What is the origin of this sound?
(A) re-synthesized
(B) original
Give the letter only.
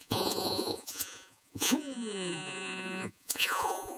A